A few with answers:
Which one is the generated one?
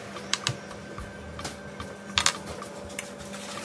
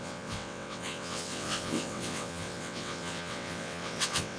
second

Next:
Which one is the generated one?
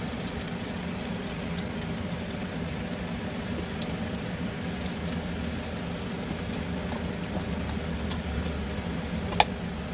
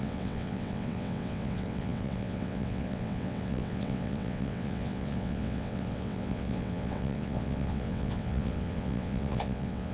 second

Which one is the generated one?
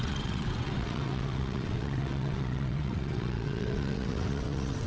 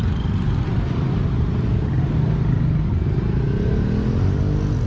first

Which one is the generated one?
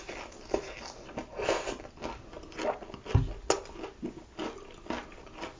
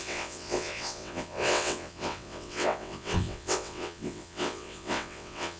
second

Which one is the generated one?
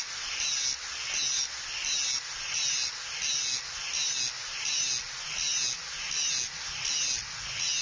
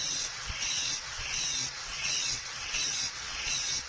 second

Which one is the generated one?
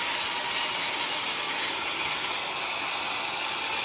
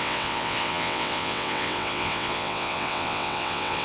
second